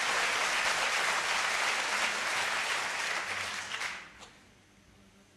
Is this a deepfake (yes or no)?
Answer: no